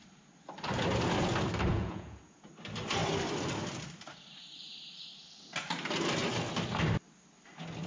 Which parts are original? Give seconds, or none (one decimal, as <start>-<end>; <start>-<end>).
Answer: 0.0-1.7; 2.5-7.9